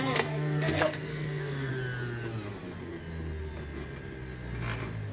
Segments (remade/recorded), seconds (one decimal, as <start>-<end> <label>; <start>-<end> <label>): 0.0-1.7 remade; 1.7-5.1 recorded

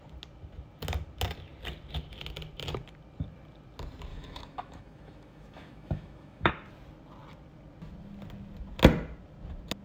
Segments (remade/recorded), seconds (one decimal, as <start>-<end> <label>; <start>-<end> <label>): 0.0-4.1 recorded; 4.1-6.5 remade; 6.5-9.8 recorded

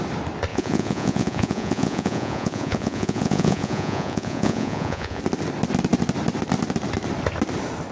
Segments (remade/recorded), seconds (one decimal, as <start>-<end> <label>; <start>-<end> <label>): 0.0-0.5 recorded; 0.5-5.2 remade; 5.2-7.9 recorded

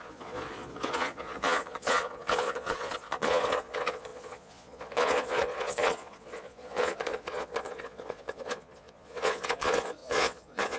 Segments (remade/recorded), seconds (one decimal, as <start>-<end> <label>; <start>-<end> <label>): 0.0-10.8 remade

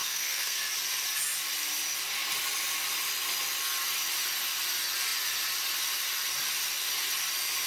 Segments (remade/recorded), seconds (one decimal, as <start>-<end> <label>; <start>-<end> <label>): 0.0-0.7 remade; 0.7-7.7 recorded

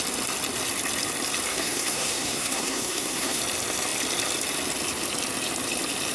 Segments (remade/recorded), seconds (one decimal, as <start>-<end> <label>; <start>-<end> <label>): 0.0-1.5 recorded; 1.5-3.4 remade; 3.4-6.1 recorded

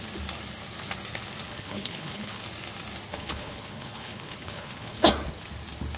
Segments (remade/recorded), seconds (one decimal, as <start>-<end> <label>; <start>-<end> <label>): 0.0-1.5 recorded; 1.5-2.4 remade; 2.4-3.1 recorded; 3.1-5.1 remade; 5.1-6.0 recorded

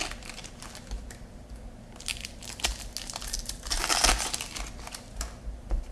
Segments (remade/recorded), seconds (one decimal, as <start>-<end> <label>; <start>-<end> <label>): 0.0-5.9 recorded